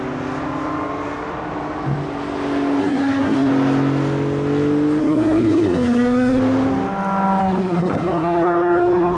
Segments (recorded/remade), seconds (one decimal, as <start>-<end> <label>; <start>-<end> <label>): 0.0-2.8 recorded; 2.8-3.5 remade; 3.5-5.0 recorded; 5.0-6.4 remade; 6.4-7.4 recorded; 7.4-9.2 remade